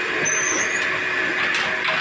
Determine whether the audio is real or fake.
real